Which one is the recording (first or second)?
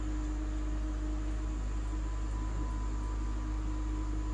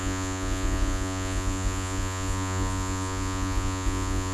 first